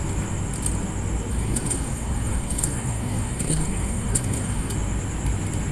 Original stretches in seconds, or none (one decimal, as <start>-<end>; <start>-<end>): 0.0-1.3; 4.7-5.7